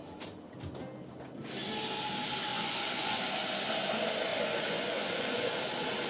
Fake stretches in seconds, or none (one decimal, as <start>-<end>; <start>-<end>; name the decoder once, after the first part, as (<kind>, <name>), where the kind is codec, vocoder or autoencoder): 2.5-3.2 (vocoder, Vocos); 4.3-5.6